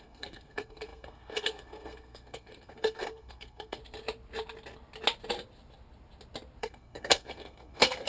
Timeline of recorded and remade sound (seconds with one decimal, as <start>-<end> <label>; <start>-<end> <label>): 0.0-3.8 remade; 3.8-6.6 recorded; 6.6-8.1 remade